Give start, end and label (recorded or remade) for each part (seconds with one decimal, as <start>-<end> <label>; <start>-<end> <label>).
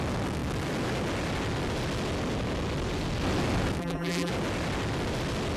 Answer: 0.0-3.8 recorded; 3.8-4.3 remade; 4.3-5.6 recorded